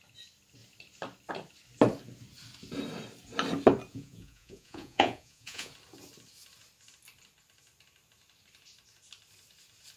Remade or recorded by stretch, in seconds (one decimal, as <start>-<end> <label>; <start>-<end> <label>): 0.0-3.9 recorded; 3.9-5.7 remade; 5.7-10.0 recorded